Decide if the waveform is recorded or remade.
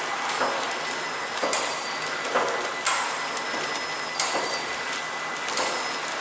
recorded